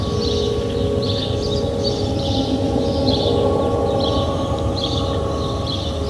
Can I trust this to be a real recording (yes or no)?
yes